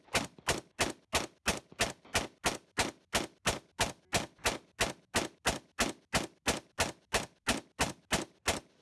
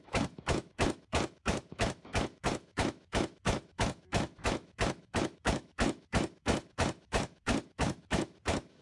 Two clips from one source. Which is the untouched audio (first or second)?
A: first